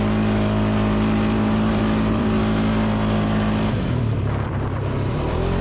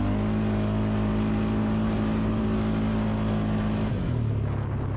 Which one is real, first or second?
second